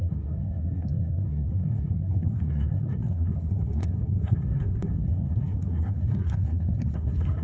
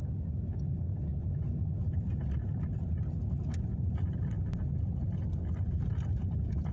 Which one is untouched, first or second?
second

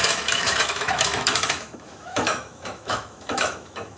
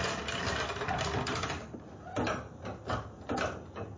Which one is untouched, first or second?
second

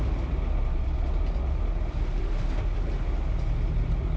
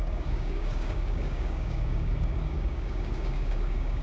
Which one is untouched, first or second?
first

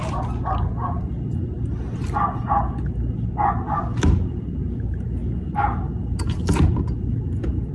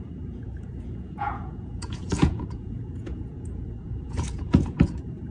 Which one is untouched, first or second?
first